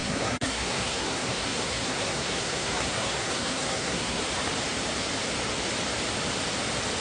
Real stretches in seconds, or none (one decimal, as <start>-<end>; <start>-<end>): 4.2-7.0